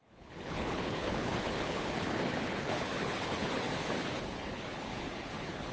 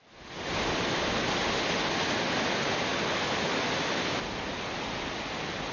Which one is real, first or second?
second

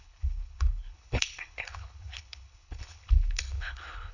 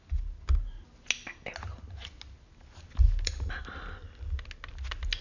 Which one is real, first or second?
second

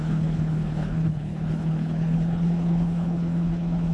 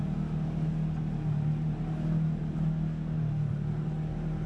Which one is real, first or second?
second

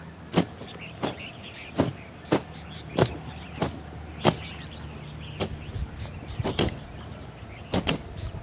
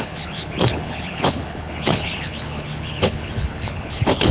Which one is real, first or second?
first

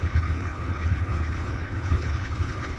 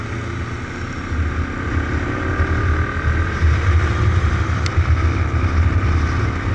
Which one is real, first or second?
second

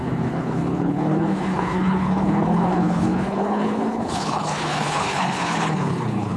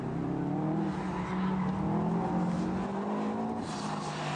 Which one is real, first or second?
second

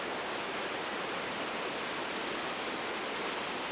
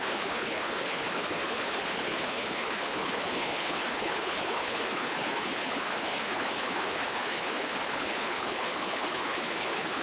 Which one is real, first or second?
first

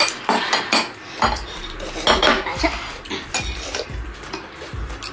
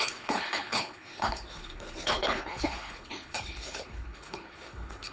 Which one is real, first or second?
first